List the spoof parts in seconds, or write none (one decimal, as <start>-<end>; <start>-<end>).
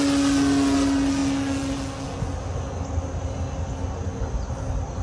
none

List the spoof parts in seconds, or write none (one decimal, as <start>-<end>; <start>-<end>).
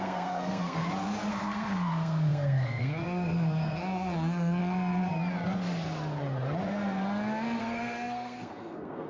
0.0-0.8; 1.3-4.6; 7.6-9.1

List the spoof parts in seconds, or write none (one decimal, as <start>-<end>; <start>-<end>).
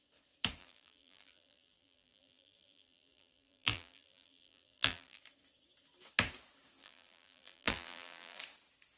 0.6-5.2; 6.8-8.4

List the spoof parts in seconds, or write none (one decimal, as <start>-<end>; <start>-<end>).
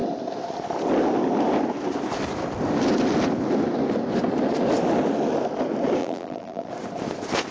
6.0-6.7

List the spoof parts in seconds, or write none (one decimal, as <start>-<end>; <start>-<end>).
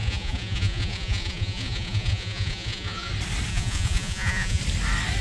0.0-3.1; 3.5-4.6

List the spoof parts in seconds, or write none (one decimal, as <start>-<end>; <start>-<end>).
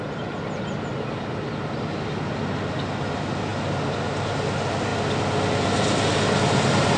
none